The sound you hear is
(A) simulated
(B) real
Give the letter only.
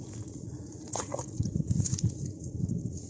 A